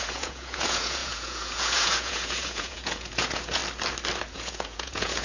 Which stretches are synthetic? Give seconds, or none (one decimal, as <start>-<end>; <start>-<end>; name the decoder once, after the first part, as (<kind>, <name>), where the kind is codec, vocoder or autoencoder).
0.0-3.6 (vocoder, Vocos); 4.2-5.2